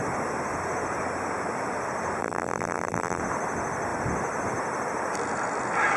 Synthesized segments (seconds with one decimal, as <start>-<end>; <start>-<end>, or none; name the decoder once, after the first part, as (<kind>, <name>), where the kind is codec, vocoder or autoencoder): 2.2-3.2 (vocoder, BigVGAN v2)